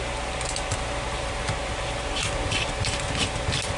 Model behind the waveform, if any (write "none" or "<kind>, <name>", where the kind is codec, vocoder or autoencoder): none